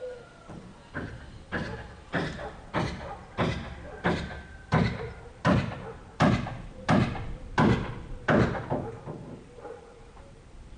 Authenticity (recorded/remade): remade